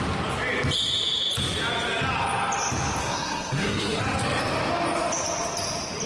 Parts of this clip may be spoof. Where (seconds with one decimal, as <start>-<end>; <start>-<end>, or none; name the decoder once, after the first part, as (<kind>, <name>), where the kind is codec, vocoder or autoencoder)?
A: 3.0-4.0 (codec, SNAC)